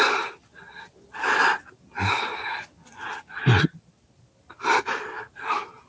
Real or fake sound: real